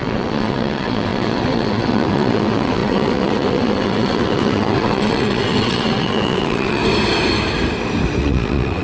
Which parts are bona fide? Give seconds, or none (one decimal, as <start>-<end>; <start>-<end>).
6.8-8.2